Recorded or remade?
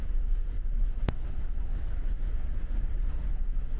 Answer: recorded